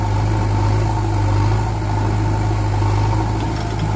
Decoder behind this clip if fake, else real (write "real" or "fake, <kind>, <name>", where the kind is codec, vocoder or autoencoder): real